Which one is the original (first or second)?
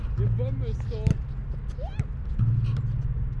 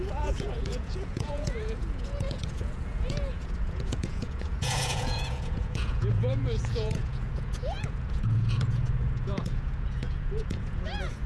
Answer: first